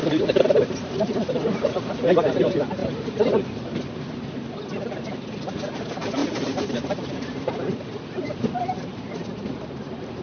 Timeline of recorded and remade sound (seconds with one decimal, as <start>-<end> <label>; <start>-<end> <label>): 0.0-1.3 remade; 1.3-2.8 recorded; 2.8-3.3 remade; 3.3-6.2 recorded; 6.2-7.5 remade; 7.5-10.2 recorded